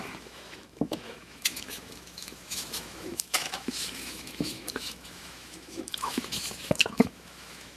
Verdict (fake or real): fake